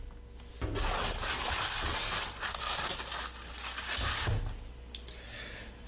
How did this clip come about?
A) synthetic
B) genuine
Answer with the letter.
B